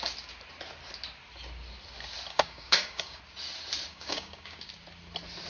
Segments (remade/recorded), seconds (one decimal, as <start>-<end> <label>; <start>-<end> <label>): 0.0-2.3 recorded; 2.3-3.2 remade; 3.2-3.9 recorded; 3.9-4.7 remade; 4.7-5.5 recorded